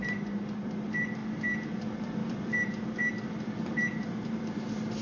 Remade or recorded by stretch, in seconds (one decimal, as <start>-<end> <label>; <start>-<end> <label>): 0.0-1.2 remade; 1.2-1.8 recorded; 1.8-5.0 remade